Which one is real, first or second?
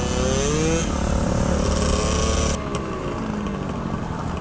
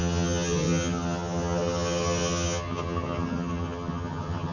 first